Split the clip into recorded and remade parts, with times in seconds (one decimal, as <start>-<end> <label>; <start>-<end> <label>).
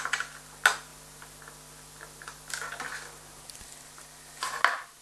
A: 0.0-5.0 recorded